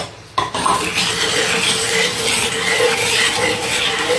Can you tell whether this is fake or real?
real